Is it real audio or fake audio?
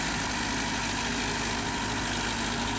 real